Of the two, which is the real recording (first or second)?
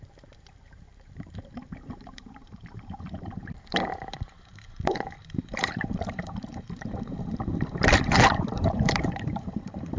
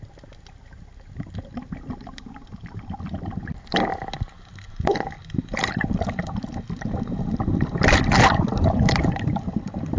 second